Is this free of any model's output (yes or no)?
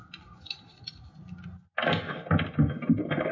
yes